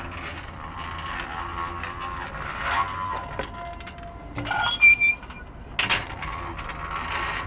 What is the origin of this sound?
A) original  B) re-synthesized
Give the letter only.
A